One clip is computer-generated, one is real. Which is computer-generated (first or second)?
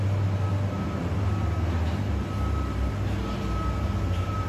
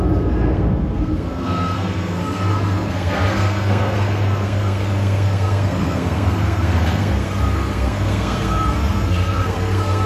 second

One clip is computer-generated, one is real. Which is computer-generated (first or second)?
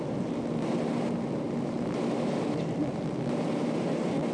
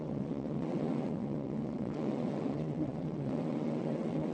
second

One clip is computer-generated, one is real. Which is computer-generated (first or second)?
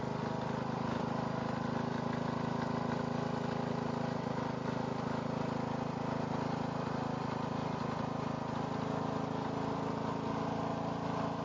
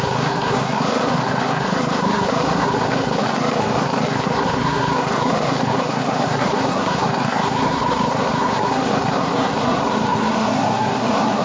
second